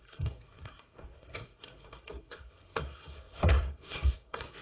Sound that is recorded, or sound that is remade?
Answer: remade